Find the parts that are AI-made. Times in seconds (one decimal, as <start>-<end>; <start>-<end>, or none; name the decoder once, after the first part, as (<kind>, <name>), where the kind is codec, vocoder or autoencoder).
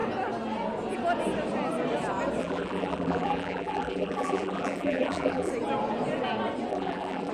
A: 2.4-5.5 (vocoder, BigVGAN v2); 6.7-7.3